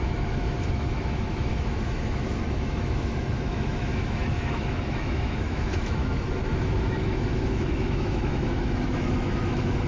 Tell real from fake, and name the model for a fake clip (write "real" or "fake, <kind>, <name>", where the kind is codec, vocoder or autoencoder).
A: fake, autoencoder, DAC-VAE